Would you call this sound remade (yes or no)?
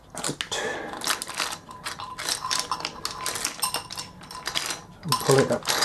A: no